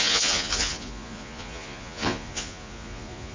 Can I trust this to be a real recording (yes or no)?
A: no